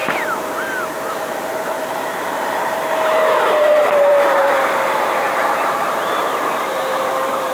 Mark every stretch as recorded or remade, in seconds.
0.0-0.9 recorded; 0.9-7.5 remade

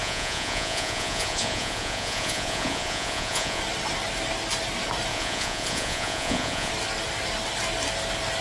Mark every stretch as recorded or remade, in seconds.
0.0-3.6 remade; 3.6-5.1 recorded; 5.1-6.7 remade; 6.7-8.4 recorded

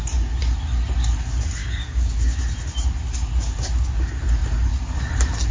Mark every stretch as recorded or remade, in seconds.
0.0-1.6 recorded; 1.6-2.1 remade; 2.1-5.5 recorded

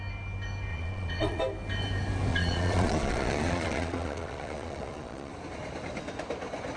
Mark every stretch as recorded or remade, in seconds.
0.0-0.7 recorded; 0.7-1.4 remade; 1.4-2.3 recorded; 2.3-5.3 remade; 5.3-6.8 recorded